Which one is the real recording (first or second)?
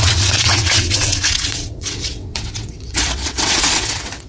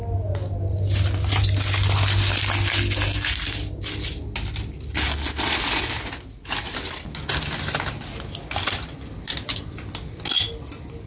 second